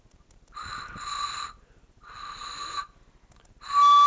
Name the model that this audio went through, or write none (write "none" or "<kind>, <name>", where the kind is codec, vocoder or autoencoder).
none